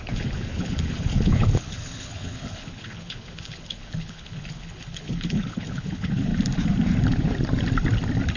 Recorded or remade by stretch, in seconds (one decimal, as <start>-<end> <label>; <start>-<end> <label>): 0.0-6.3 remade; 6.3-8.4 recorded